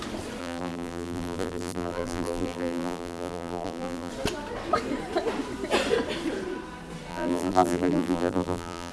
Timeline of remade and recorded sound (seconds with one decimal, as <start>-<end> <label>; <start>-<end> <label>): 0.0-0.4 recorded; 0.4-4.1 remade; 4.1-7.1 recorded; 7.1-8.9 remade